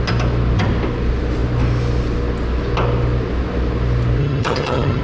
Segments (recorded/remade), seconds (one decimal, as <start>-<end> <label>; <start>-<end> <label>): 0.0-4.2 recorded; 4.2-5.0 remade